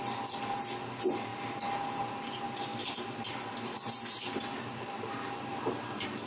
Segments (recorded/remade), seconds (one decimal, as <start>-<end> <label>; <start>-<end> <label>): 0.0-6.3 recorded